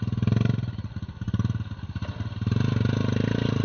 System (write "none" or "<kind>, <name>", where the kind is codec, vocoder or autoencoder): none